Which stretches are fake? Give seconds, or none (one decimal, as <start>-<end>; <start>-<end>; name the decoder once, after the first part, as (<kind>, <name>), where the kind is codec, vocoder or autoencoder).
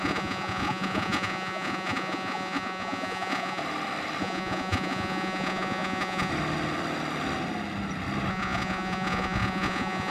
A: 0.0-3.6 (vocoder, Vocos); 4.2-6.3; 8.3-10.1